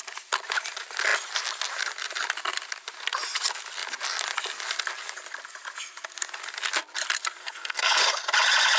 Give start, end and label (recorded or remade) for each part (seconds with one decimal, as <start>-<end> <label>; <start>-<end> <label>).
0.0-7.4 recorded; 7.4-8.0 remade; 8.0-8.8 recorded